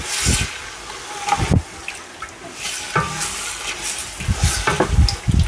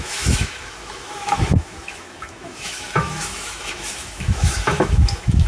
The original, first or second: first